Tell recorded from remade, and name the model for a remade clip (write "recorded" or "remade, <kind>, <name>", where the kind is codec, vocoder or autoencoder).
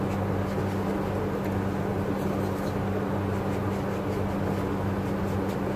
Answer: recorded